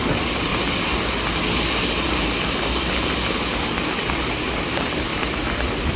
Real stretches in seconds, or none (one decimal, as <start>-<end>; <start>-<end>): 0.0-5.1